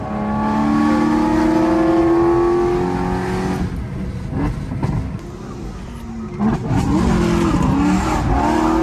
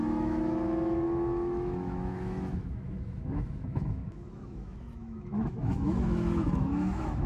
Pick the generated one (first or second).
second